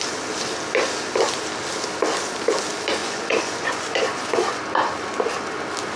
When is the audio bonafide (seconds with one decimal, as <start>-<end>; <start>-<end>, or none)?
0.0-3.0; 4.6-6.0